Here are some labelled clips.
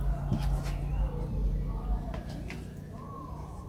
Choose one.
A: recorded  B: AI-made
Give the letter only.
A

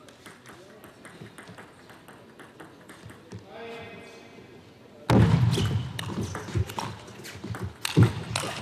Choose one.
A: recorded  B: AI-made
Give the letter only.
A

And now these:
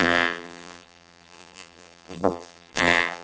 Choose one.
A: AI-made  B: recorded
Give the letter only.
A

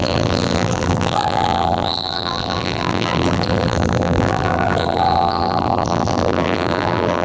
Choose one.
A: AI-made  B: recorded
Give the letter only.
A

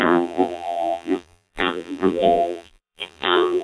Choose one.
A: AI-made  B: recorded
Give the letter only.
A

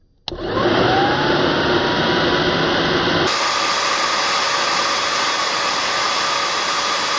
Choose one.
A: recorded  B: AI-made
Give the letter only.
A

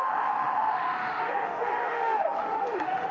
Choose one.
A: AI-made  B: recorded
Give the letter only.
A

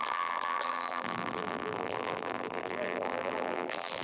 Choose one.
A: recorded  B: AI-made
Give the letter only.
B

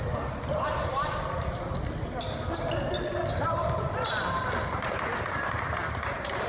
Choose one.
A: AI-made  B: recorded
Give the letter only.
B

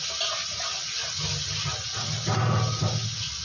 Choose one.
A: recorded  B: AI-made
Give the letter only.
A